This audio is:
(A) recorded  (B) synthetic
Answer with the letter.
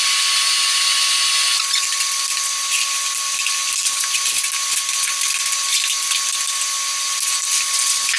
A